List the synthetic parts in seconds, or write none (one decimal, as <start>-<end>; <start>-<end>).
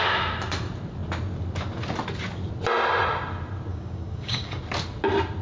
3.7-4.6